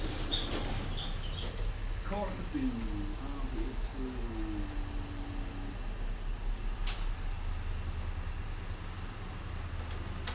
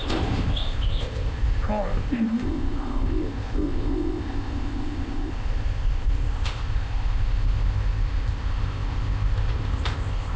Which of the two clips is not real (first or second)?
second